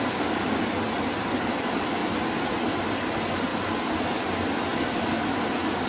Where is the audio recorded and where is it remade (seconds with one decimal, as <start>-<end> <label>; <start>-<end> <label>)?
0.0-5.9 recorded

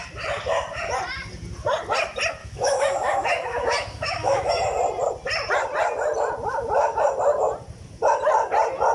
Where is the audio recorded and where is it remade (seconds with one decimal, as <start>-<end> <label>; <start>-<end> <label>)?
0.0-2.4 recorded; 2.4-4.5 remade; 4.5-8.9 recorded

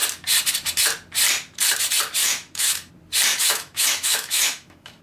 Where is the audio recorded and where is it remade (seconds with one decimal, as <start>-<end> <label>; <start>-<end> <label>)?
0.0-2.2 recorded; 2.2-2.9 remade; 2.9-3.3 recorded; 3.3-5.0 remade

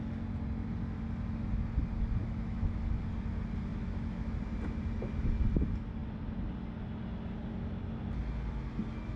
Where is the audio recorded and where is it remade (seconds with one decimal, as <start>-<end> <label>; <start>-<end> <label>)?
0.0-2.2 recorded; 2.2-3.0 remade; 3.0-3.7 recorded; 3.7-4.4 remade; 4.4-9.2 recorded